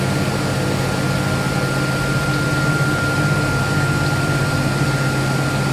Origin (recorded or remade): recorded